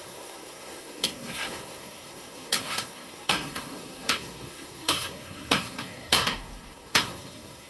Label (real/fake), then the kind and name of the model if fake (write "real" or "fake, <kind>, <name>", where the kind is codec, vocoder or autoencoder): fake, codec, SNAC